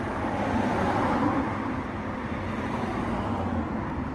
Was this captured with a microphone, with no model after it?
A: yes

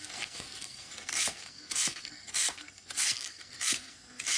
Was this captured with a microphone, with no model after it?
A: no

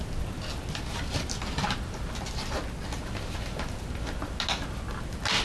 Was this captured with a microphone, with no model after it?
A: yes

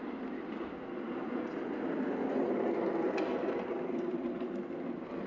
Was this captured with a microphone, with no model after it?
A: yes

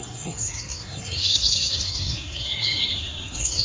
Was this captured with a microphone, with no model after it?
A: no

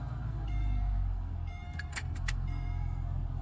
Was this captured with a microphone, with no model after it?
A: no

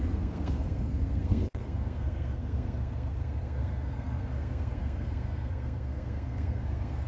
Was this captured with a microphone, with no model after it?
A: no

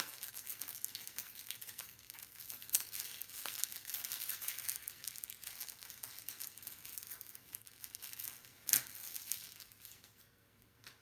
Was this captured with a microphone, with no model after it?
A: no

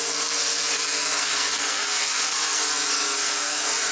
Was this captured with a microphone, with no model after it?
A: no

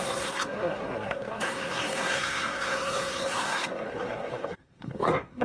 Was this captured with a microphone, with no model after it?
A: no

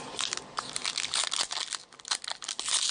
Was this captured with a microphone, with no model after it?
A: yes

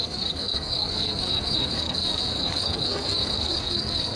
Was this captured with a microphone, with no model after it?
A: no